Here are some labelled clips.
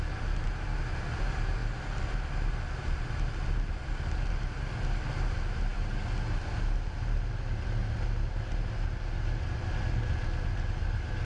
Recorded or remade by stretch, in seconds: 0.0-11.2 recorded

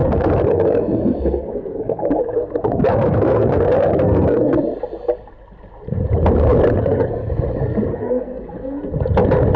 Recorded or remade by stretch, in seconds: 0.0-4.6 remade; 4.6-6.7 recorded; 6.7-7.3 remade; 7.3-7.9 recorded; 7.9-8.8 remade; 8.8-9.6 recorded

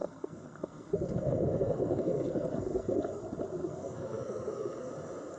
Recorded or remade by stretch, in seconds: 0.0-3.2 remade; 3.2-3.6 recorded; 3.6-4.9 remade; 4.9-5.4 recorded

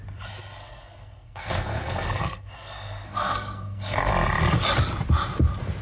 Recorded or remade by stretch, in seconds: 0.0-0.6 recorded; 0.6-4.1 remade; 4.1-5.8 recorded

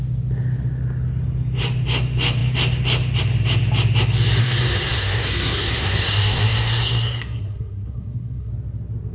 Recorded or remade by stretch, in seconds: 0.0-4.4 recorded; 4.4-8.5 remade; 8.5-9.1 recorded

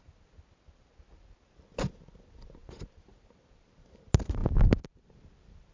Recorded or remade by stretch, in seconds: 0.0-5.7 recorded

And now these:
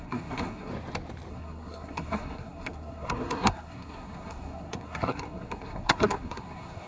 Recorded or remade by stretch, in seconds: 0.0-0.7 remade; 0.7-1.3 recorded; 1.3-6.9 remade

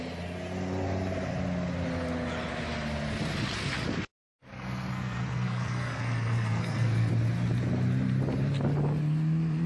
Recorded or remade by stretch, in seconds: 0.0-4.5 recorded; 4.5-7.1 remade; 7.1-9.7 recorded